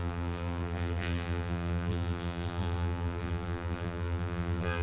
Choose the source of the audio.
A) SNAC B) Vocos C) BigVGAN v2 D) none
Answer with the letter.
C